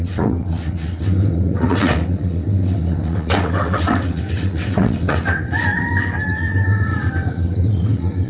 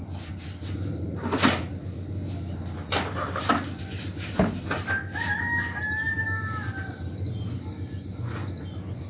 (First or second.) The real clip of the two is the second